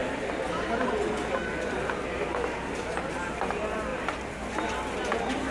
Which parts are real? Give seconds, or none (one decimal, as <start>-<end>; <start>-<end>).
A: 0.0-5.5